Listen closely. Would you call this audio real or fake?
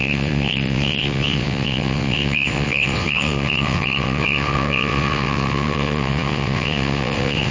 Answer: fake